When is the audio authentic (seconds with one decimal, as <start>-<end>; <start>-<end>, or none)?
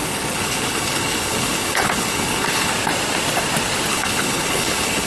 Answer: 2.7-3.9